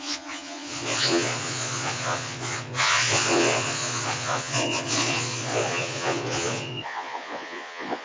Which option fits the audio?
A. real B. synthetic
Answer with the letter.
B